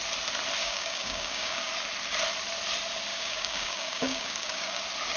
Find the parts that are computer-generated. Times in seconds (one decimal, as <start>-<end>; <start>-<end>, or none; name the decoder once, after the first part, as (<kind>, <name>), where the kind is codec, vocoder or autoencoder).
0.6-1.7 (codec, DAC); 3.1-4.8